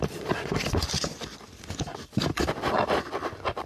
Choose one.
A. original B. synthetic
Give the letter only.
B